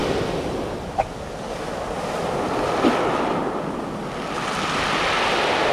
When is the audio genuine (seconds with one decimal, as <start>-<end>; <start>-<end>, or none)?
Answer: 0.0-5.7